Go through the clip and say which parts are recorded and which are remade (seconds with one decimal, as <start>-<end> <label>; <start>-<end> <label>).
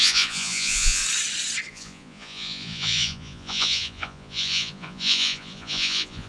0.0-1.0 remade; 1.0-1.7 recorded; 1.7-6.3 remade